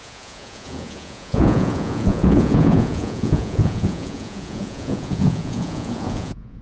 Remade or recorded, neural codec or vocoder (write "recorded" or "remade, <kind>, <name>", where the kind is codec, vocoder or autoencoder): remade, vocoder, Vocos